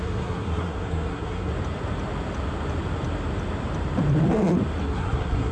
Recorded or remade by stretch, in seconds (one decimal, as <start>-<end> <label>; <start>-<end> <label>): 0.0-1.5 remade; 1.5-4.8 recorded; 4.8-5.5 remade